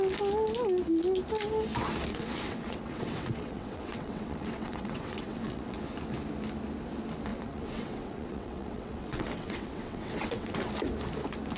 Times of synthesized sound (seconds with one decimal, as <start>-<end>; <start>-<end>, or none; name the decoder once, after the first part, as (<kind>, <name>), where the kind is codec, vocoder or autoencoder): 2.1-5.8 (vocoder, WaveNeXt); 7.3-10.7